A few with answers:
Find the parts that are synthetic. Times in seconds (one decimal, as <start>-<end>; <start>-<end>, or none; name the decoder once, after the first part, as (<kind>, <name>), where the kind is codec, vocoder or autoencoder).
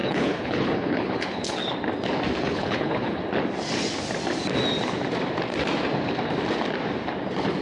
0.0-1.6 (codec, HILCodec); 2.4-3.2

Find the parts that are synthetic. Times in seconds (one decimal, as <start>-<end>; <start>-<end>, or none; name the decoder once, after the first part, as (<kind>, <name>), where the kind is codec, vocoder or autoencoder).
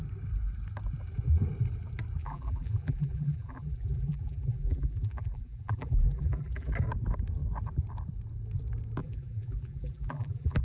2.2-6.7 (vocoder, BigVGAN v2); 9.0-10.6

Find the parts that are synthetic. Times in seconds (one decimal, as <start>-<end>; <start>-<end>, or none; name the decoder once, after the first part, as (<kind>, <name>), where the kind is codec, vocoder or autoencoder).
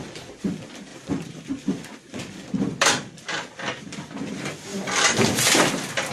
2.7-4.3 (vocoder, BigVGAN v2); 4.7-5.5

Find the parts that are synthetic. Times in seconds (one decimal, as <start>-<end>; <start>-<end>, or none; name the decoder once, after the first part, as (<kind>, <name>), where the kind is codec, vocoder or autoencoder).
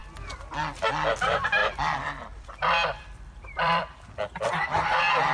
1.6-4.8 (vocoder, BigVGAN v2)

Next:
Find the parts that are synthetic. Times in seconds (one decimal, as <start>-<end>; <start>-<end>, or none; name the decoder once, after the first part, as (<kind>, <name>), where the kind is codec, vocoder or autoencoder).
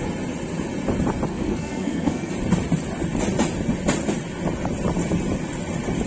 1.3-2.3 (codec, SNAC)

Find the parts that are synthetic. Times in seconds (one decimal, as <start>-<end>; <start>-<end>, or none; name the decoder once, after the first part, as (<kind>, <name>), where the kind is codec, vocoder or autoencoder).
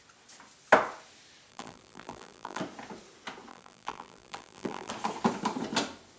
1.5-2.6 (vocoder, BigVGAN v2); 3.5-4.9